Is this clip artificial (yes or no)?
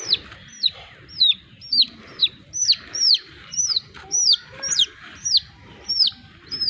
yes